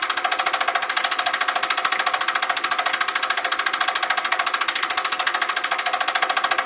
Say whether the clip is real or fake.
real